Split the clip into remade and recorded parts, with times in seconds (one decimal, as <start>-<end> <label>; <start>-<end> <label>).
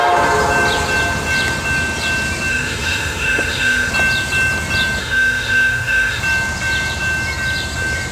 0.0-2.5 recorded; 2.5-3.9 remade; 3.9-5.0 recorded; 5.0-6.2 remade; 6.2-8.1 recorded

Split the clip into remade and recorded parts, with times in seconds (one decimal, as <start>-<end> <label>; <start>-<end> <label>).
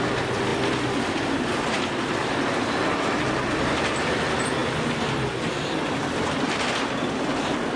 0.0-4.6 remade; 4.6-6.3 recorded; 6.3-7.8 remade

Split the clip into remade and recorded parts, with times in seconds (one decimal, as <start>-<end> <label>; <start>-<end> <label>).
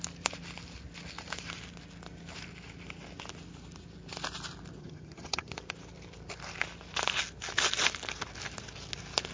0.0-4.8 recorded; 4.8-5.5 remade; 5.5-9.3 recorded